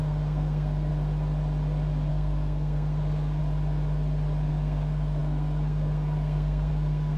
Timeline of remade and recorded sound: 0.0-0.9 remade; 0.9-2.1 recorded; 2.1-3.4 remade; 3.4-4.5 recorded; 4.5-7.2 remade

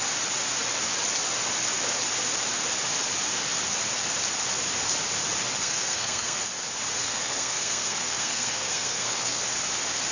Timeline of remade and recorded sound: 0.0-5.6 recorded; 5.6-6.4 remade; 6.4-7.0 recorded; 7.0-9.4 remade; 9.4-10.1 recorded

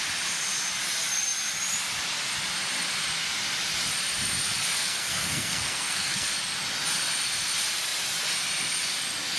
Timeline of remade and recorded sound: 0.0-4.8 recorded; 4.8-6.3 remade; 6.3-9.4 recorded

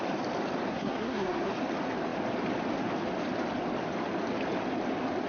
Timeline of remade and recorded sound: 0.0-0.7 recorded; 0.7-1.5 remade; 1.5-5.3 recorded

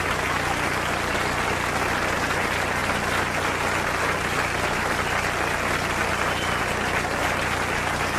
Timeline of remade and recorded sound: 0.0-8.2 recorded

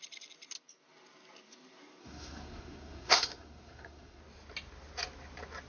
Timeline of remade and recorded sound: 0.0-2.0 recorded; 2.0-4.2 remade; 4.2-5.7 recorded

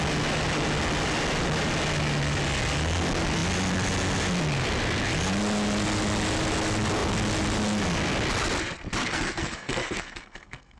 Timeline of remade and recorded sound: 0.0-9.0 recorded; 9.0-10.8 remade

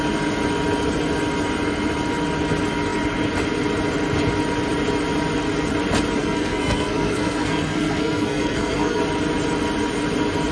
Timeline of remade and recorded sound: 0.0-6.2 recorded; 6.2-9.0 remade; 9.0-10.5 recorded